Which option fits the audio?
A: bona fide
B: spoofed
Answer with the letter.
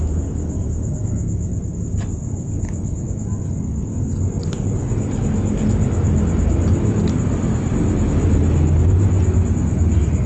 A